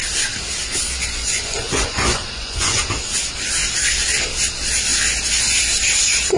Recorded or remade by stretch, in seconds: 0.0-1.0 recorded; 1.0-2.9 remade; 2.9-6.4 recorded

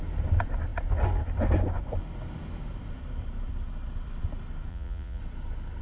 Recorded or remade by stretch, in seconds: 0.0-4.7 recorded; 4.7-5.2 remade; 5.2-5.8 recorded

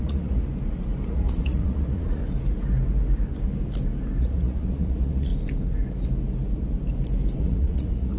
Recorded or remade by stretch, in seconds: 0.0-0.5 remade; 0.5-1.1 recorded; 1.1-2.2 remade; 2.2-4.2 recorded; 4.2-5.3 remade; 5.3-7.4 recorded; 7.4-8.2 remade

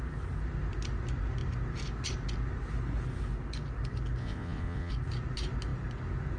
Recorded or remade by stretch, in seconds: 0.0-4.2 recorded; 4.2-4.9 remade; 4.9-6.4 recorded

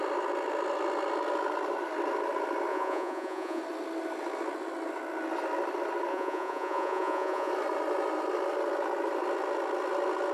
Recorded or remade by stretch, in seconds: 0.0-2.7 recorded; 2.7-3.6 remade; 3.6-6.1 recorded; 6.1-7.5 remade; 7.5-10.3 recorded